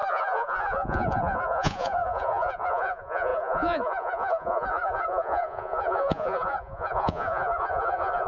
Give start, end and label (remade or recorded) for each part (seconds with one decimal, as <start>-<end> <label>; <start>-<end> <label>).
0.0-8.3 remade